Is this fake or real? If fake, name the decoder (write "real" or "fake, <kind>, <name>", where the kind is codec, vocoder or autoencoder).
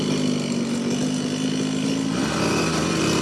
real